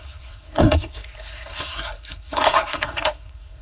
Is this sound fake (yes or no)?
yes